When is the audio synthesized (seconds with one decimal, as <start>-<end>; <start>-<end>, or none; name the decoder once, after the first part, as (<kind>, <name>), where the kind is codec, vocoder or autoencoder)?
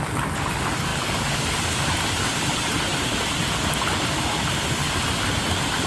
none